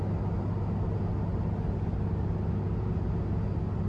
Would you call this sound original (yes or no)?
yes